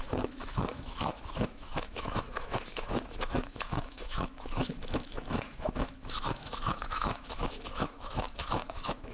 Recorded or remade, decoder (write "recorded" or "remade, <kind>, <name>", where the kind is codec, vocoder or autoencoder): remade, autoencoder, DAC-VAE